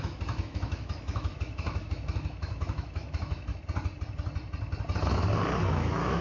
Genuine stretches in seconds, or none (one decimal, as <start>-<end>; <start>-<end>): 3.5-5.7